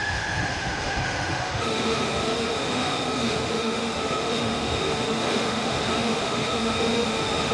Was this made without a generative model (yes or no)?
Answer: no